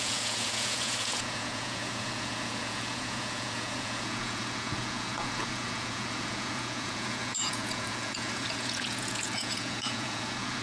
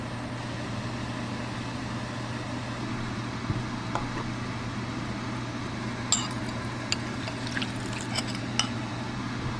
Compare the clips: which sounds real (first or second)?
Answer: second